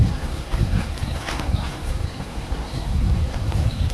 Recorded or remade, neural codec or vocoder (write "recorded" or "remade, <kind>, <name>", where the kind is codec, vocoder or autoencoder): remade, codec, SNAC